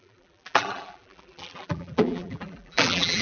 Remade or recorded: remade